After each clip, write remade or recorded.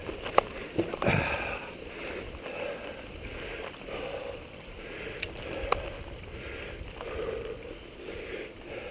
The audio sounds recorded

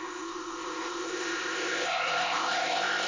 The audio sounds remade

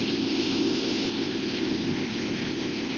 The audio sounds remade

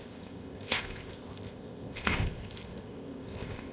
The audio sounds remade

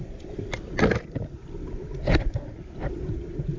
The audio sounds recorded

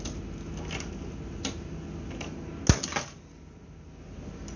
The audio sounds recorded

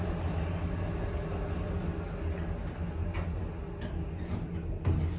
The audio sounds recorded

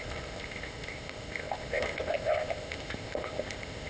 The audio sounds remade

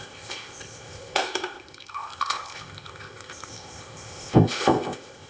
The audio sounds remade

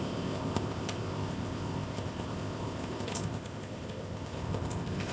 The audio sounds remade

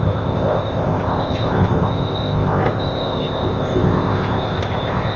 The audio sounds remade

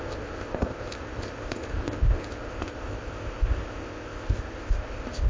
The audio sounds remade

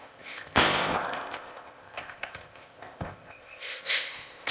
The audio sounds remade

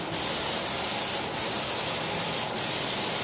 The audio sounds recorded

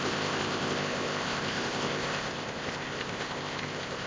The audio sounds remade